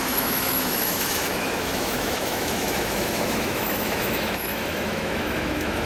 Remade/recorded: remade